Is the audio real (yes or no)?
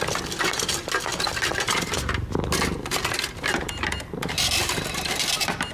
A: yes